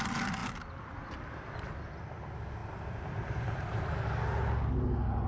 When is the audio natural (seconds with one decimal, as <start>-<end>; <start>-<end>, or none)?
0.0-2.6; 4.0-5.3